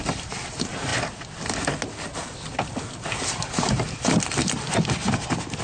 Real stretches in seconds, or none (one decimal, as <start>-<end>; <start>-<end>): 0.0-5.6